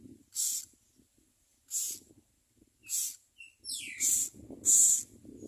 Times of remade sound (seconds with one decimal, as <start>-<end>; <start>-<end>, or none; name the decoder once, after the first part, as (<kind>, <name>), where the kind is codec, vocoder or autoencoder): none